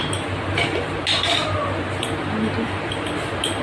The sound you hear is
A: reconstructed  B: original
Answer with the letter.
B